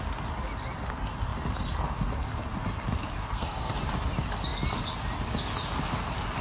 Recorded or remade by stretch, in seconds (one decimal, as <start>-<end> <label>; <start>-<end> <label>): 0.0-3.2 recorded; 3.2-3.7 remade; 3.7-6.4 recorded